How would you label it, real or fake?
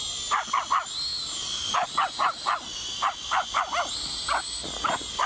real